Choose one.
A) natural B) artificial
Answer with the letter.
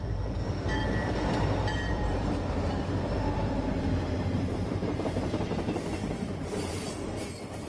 B